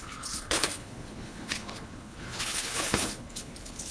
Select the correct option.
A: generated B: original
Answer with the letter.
A